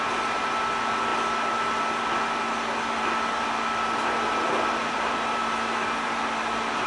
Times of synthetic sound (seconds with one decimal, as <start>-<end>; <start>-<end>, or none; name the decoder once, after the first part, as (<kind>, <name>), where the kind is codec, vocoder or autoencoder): 1.1-3.0 (vocoder, BigVGAN v2)